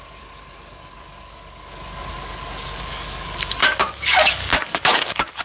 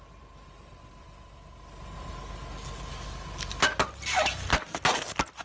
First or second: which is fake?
first